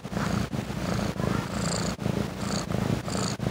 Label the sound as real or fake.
real